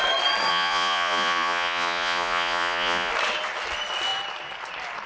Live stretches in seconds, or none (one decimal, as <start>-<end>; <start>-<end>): 0.0-0.5; 3.1-5.1